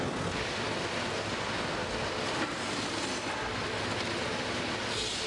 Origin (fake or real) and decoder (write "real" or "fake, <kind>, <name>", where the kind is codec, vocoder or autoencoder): real